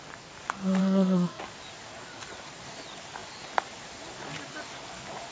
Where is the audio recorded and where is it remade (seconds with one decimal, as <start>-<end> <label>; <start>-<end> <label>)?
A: 0.0-0.8 recorded; 0.8-1.4 remade; 1.4-5.3 recorded